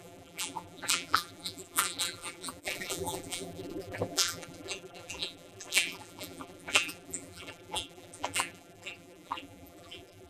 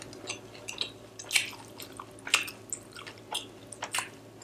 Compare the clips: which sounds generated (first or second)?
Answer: first